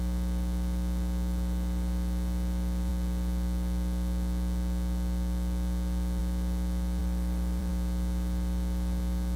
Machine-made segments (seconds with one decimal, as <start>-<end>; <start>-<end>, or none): 7.0-7.7